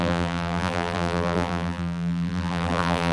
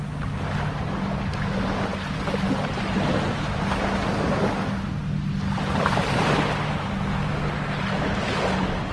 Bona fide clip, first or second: second